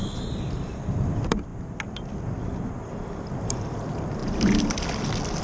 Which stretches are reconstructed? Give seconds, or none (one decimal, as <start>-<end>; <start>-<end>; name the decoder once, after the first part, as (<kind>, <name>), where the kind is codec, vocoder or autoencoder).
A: none